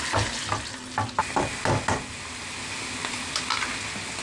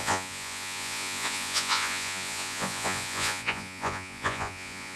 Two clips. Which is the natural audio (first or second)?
first